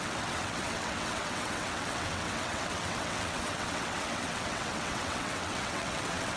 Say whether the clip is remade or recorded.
remade